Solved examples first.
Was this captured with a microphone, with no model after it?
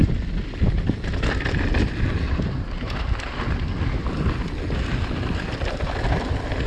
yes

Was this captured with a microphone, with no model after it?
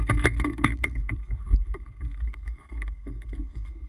no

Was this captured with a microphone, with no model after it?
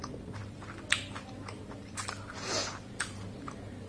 yes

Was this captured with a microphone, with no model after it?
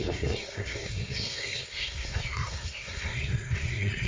no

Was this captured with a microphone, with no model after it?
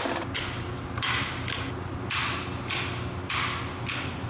yes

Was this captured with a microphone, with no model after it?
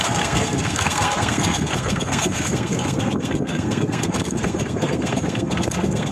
no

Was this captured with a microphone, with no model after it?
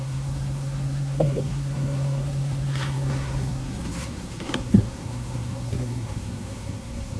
no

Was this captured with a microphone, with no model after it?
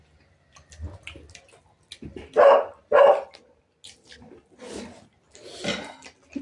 yes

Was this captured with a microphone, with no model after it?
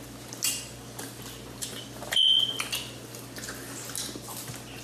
yes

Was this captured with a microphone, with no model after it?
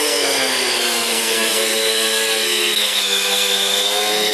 no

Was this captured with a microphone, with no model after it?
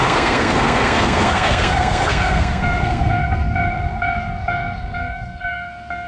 no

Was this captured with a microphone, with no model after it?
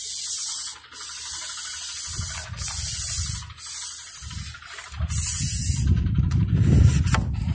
yes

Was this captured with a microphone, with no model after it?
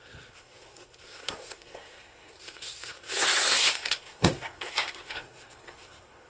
no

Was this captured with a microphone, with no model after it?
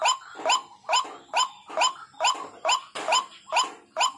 yes